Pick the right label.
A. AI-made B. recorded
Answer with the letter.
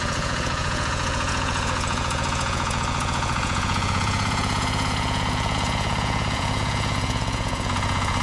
A